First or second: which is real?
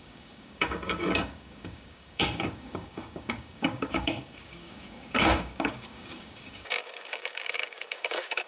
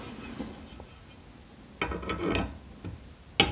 second